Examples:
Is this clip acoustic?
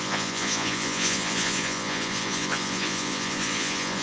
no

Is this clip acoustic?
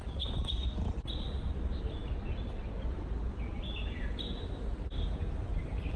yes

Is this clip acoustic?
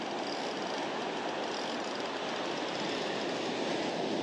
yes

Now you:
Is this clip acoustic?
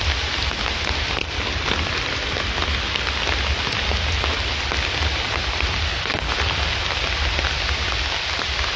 yes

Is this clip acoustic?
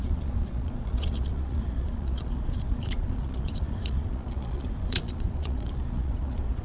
no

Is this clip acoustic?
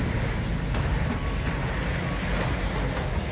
yes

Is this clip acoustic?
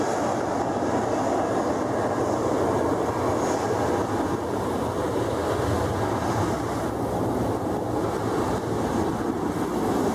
yes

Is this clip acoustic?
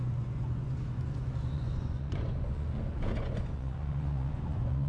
no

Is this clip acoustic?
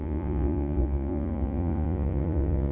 no